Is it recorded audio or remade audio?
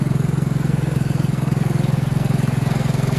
remade